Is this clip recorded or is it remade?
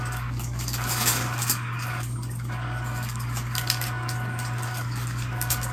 remade